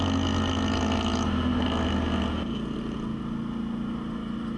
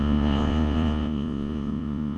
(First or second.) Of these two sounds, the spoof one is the second